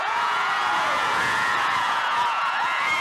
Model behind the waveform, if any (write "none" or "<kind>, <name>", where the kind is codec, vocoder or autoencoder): vocoder, Vocos